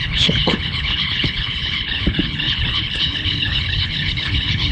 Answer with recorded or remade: remade